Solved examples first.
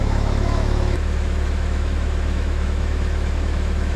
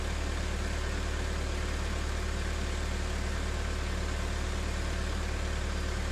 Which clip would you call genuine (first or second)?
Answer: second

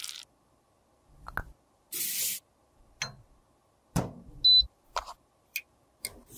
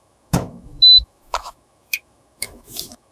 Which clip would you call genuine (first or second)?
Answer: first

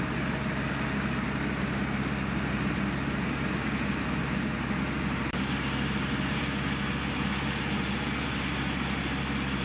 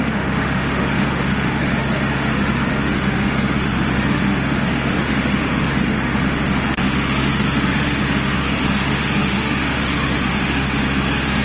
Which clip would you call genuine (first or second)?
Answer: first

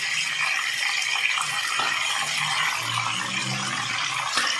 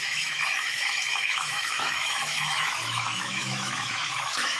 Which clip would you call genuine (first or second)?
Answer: first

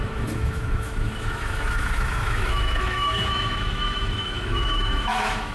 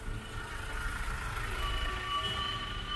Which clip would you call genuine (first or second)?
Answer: second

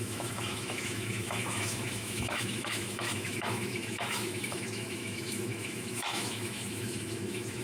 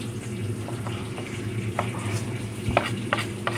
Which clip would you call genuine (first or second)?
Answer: second